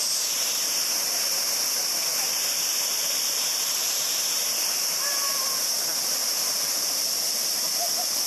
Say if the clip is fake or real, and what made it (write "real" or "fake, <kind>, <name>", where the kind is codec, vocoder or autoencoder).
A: fake, vocoder, BigVGAN v2